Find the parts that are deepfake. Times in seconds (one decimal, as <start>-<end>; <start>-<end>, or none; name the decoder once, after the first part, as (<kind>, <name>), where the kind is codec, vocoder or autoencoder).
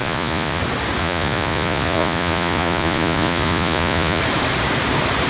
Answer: 0.0-0.6 (vocoder, Vocos); 1.0-4.2